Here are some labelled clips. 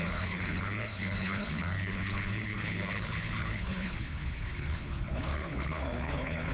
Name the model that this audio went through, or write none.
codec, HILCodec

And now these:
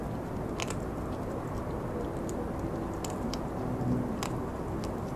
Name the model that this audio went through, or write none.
none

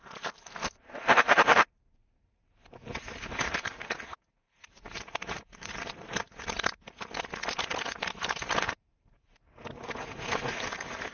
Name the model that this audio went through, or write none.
vocoder, BigVGAN v2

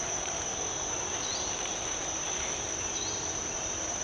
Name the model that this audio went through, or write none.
vocoder, BigVGAN v2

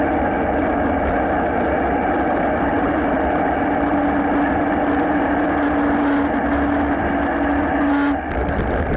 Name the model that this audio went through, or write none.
none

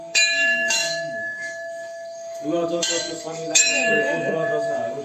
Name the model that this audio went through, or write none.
codec, DAC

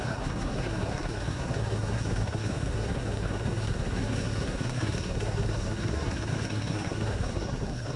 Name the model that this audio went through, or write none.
codec, SNAC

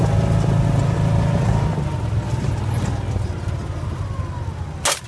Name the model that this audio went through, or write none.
none